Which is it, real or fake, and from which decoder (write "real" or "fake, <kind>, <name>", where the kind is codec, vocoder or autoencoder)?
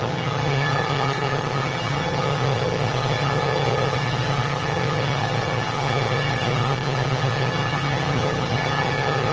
fake, vocoder, HiFi-GAN